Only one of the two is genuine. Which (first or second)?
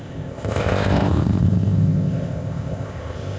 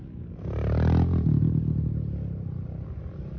second